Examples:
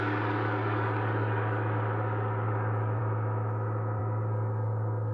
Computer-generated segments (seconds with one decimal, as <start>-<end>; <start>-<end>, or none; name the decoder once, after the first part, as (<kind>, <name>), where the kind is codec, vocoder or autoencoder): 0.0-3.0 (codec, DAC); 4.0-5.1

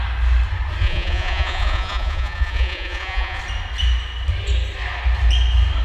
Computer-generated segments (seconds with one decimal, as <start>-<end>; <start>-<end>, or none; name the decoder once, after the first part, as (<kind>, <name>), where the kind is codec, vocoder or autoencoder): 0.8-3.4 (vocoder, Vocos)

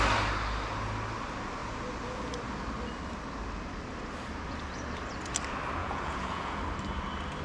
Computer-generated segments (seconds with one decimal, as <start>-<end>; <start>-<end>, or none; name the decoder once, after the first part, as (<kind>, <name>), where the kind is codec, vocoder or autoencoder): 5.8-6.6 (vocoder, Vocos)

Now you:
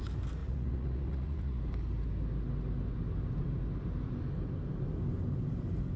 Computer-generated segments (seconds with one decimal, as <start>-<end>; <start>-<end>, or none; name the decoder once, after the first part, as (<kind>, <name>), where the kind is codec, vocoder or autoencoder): 0.4-1.6 (vocoder, Vocos)

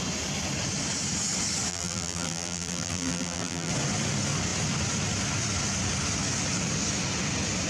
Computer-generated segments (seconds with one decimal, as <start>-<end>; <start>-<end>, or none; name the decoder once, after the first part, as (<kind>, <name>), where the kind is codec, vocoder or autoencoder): 1.7-3.7 (vocoder, BigVGAN v2)

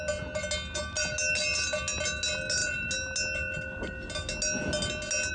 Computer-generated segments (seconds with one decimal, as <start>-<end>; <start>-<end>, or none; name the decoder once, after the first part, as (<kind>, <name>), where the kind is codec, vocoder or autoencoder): none

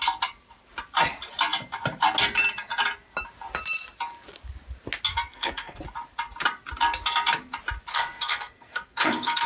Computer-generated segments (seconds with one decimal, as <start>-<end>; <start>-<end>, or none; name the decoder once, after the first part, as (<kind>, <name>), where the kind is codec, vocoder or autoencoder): 5.1-5.8 (codec, SNAC); 7.9-9.5